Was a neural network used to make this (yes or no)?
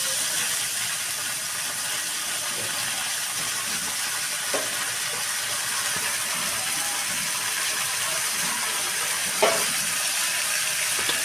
yes